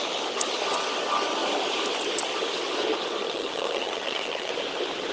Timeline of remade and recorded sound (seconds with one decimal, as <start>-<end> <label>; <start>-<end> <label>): 0.0-3.2 recorded; 3.2-4.5 remade; 4.5-5.1 recorded